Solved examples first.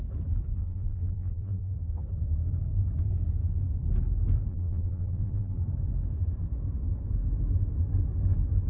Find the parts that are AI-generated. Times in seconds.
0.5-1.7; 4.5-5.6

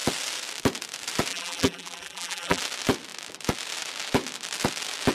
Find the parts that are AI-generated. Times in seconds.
1.3-2.6

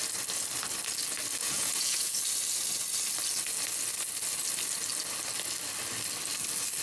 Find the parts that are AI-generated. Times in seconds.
1.4-2.1